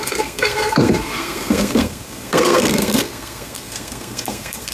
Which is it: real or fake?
fake